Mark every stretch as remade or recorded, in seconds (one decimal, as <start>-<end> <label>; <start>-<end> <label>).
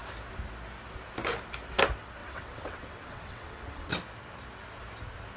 0.0-2.2 recorded; 2.2-4.0 remade; 4.0-5.4 recorded